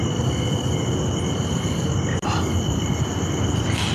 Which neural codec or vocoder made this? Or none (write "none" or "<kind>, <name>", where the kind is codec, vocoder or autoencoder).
none